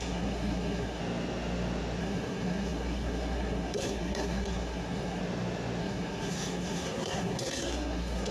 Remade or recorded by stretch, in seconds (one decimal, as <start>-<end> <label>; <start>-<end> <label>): 0.0-1.0 remade; 1.0-2.0 recorded; 2.0-5.2 remade; 5.2-5.8 recorded; 5.8-8.3 remade